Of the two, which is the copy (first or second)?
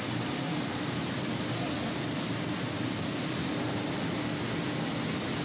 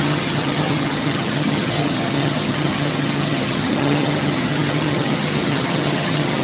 second